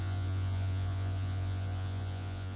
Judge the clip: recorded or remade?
remade